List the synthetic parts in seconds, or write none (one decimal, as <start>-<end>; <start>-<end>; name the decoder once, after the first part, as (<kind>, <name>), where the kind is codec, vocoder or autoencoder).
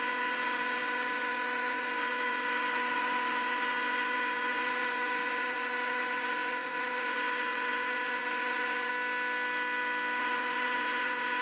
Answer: 0.0-8.9 (vocoder, WaveNeXt); 10.2-11.4